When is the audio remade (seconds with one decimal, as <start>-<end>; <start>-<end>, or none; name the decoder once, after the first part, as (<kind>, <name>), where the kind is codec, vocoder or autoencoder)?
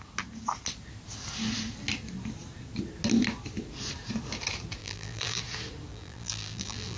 4.8-5.4 (vocoder, BigVGAN v2); 5.9-7.0